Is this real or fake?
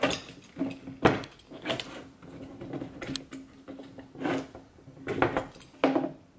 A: real